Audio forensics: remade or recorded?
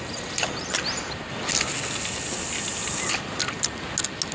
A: recorded